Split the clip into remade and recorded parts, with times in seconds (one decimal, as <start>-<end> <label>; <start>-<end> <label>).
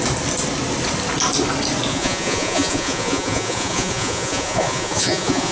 0.0-1.9 recorded; 1.9-5.5 remade